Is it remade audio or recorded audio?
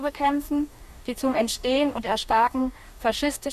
remade